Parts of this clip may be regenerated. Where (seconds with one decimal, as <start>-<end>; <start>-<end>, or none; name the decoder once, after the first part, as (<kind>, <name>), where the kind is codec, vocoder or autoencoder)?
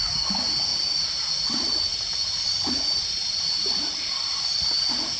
none